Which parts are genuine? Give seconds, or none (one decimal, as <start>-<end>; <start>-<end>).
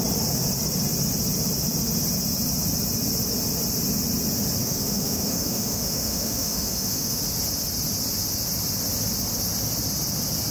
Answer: 0.0-4.6; 7.2-10.5